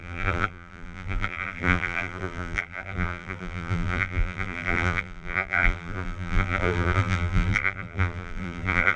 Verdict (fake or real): fake